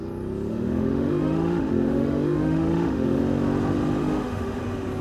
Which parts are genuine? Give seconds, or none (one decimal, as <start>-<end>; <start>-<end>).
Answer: 0.0-0.5; 3.2-4.0; 4.6-5.0